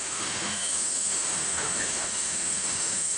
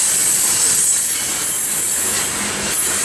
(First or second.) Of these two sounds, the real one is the second